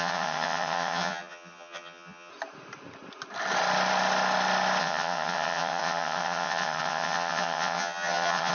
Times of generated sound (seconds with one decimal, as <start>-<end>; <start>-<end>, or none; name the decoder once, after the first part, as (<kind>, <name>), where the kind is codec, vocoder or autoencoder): 0.0-2.3 (vocoder, HiFi-GAN); 4.8-8.5